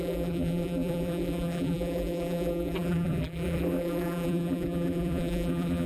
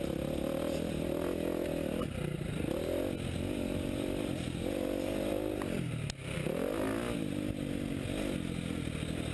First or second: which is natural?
second